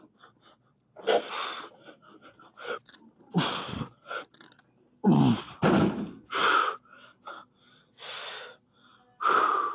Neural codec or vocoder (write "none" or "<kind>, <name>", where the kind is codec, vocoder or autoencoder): none